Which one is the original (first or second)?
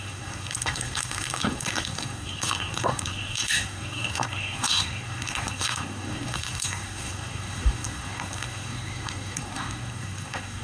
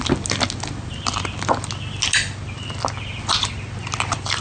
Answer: second